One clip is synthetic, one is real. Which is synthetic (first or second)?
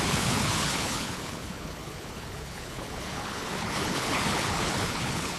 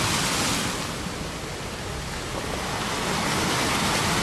first